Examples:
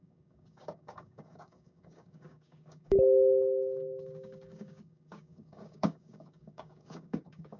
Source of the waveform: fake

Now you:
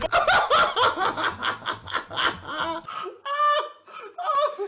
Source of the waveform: real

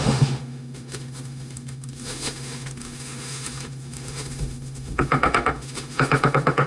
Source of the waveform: fake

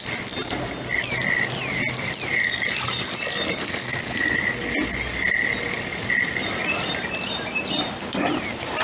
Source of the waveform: real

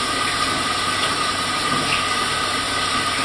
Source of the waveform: real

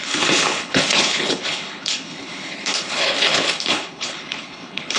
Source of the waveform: fake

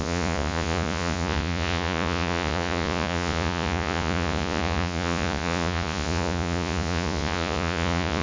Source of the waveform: fake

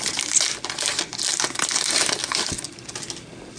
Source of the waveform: real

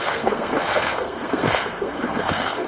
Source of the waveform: fake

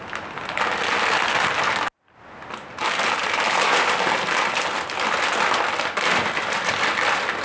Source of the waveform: real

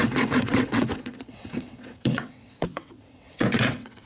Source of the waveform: fake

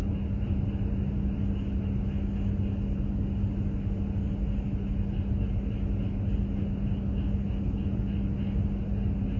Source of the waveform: real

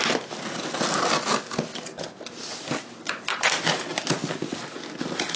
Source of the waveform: real